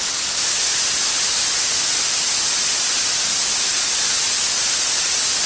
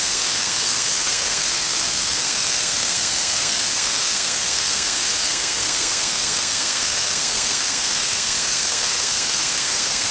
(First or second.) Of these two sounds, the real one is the first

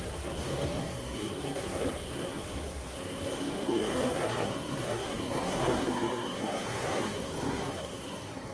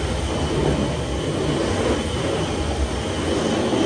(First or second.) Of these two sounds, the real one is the second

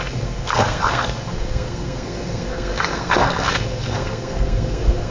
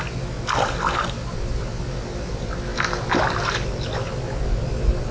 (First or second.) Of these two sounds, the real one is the second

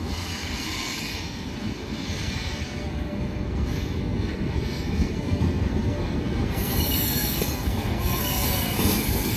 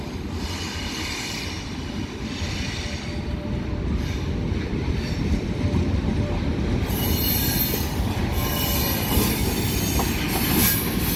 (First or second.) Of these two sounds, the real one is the second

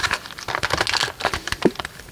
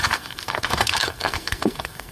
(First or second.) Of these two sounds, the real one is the first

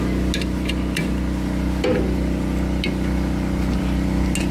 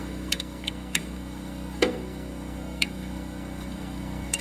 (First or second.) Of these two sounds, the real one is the first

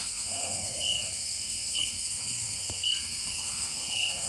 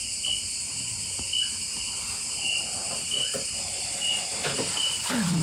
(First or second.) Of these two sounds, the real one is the second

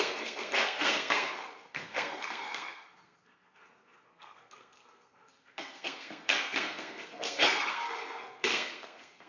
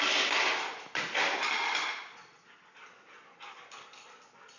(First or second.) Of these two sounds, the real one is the second